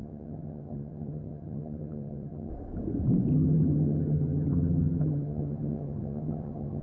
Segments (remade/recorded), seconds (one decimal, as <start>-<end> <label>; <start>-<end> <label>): 0.0-2.5 remade; 2.5-3.3 recorded; 3.3-6.8 remade